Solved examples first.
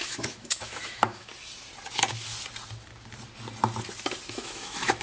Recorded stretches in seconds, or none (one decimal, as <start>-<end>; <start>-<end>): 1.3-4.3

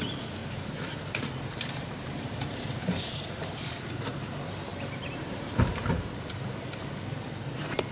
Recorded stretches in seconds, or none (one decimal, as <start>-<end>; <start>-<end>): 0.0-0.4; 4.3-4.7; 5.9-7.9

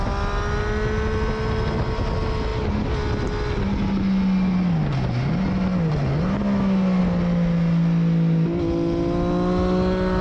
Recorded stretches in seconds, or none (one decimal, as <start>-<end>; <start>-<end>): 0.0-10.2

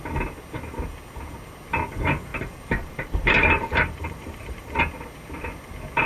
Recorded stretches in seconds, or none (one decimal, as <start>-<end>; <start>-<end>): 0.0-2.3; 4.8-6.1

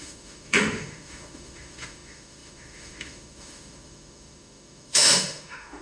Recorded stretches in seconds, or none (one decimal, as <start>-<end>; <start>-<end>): none

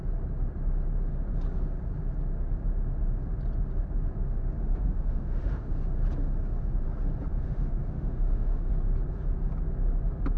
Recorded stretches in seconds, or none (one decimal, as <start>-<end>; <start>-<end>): 0.0-4.6; 5.7-7.3; 8.7-10.4